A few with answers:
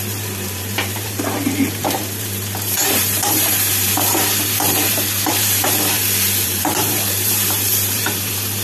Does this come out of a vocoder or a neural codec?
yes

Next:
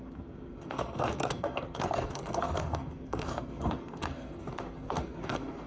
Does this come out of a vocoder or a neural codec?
yes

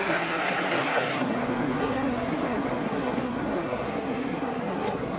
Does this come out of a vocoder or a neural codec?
yes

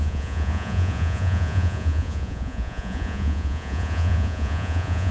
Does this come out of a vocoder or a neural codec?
yes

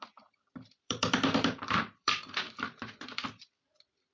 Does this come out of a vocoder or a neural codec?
yes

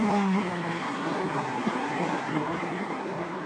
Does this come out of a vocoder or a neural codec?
yes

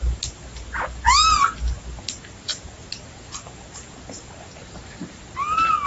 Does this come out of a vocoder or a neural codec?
no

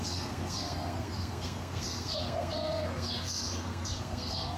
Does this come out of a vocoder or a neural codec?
yes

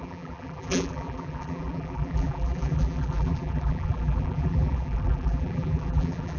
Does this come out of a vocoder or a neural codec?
yes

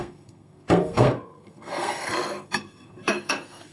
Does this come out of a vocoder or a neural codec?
yes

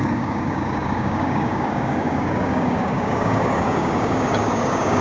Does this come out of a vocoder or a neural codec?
yes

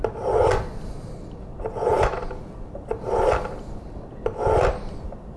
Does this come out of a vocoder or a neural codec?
no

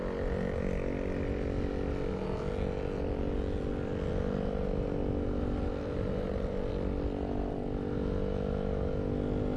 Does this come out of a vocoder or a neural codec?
no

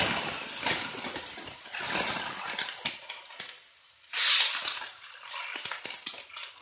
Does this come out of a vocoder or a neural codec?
no